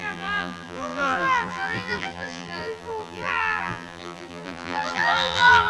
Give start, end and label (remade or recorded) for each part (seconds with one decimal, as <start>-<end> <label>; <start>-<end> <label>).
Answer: 0.0-5.7 remade